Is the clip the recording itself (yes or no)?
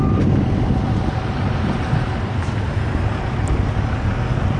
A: yes